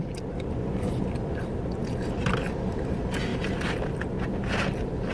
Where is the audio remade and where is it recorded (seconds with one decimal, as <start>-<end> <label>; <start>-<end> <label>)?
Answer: 0.0-0.6 recorded; 0.6-1.1 remade; 1.1-5.1 recorded